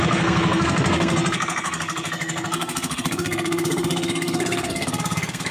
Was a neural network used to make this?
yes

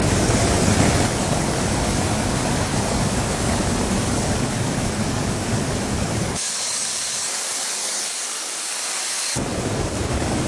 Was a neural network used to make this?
yes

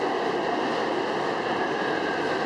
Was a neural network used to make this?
no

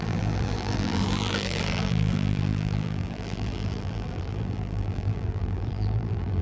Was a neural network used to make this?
yes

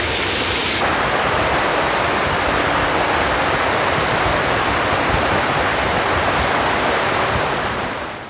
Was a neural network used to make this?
no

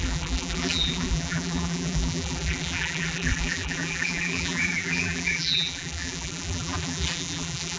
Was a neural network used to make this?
yes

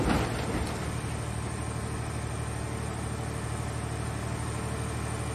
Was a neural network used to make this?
no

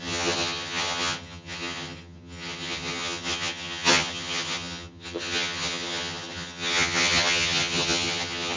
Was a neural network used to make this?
yes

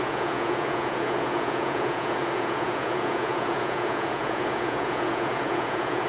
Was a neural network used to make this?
yes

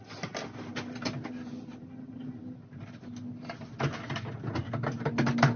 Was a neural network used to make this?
no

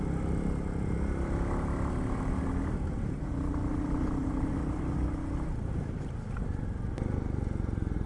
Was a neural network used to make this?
no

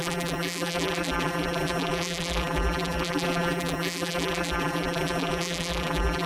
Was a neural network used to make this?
yes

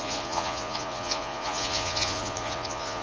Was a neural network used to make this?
yes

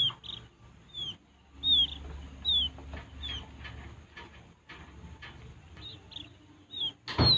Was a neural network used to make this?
no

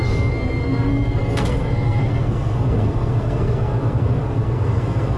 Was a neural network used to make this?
yes